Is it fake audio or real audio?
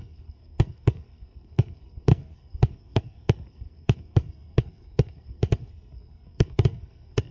fake